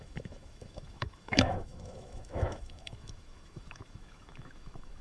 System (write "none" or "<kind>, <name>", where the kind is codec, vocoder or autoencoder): autoencoder, DAC-VAE